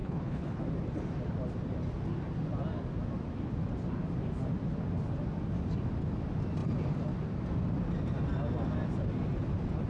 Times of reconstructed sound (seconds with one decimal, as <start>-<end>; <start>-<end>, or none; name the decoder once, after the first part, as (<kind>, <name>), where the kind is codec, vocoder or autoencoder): 0.0-0.6 (codec, HILCodec)